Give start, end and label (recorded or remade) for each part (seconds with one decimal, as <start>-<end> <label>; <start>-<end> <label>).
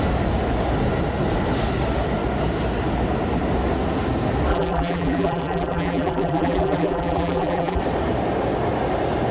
0.0-4.5 recorded; 4.5-7.8 remade; 7.8-9.3 recorded